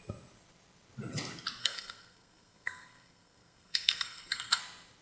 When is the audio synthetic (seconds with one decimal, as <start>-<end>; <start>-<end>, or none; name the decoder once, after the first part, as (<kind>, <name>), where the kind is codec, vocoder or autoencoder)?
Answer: 1.6-4.6 (codec, SNAC)